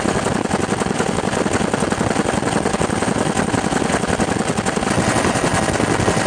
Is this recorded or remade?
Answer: recorded